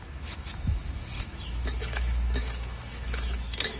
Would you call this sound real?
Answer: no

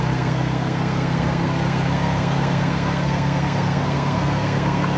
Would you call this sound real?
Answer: no